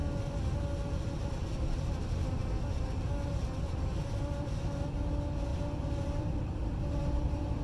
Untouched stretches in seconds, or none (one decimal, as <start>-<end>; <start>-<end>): 0.0-5.5